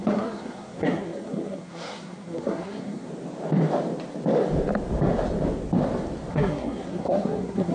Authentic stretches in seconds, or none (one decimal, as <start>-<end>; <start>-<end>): 3.1-6.3

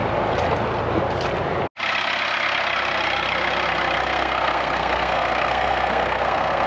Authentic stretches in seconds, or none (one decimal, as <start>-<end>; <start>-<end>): 0.0-4.0